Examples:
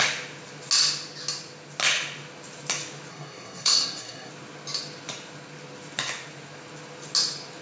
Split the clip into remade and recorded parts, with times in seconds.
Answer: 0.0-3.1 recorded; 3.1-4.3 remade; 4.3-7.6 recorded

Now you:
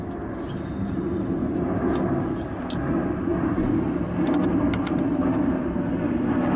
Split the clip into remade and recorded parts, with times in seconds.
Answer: 0.0-6.6 recorded

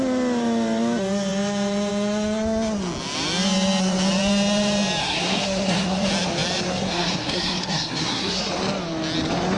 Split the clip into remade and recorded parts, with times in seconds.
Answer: 0.0-5.0 recorded; 5.0-6.1 remade; 6.1-6.7 recorded; 6.7-8.5 remade; 8.5-9.6 recorded

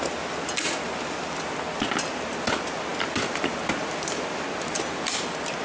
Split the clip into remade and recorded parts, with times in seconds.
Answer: 0.0-5.6 recorded